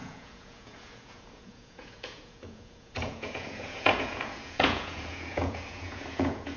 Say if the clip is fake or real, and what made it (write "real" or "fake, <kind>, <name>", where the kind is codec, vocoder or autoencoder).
fake, vocoder, Vocos